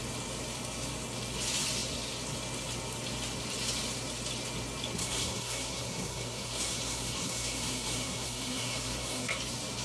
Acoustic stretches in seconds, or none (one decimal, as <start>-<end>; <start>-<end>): 0.0-5.0; 9.4-9.8